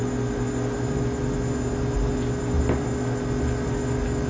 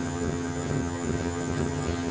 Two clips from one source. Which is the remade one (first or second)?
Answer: second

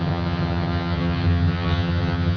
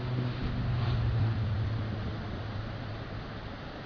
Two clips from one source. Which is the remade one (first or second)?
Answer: first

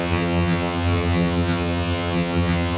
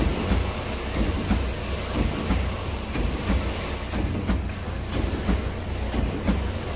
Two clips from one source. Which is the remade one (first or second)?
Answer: first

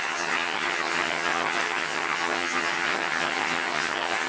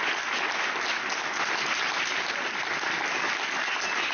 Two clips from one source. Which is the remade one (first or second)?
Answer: first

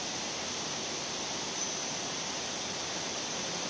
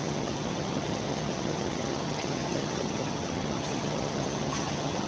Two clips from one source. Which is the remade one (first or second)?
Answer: second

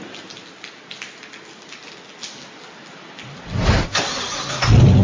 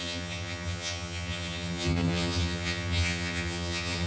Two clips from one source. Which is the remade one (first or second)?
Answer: second